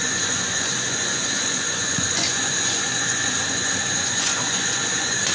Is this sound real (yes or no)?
no